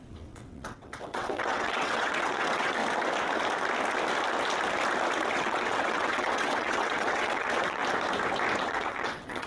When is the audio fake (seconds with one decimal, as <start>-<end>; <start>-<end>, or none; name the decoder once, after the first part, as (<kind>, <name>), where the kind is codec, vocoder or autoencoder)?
0.0-2.8 (vocoder, WaveNeXt); 5.3-7.8; 8.6-9.5